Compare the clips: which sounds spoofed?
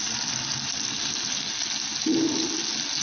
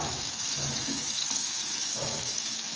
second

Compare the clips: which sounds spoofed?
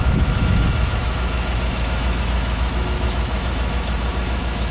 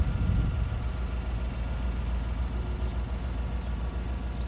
first